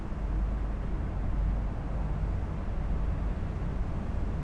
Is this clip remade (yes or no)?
no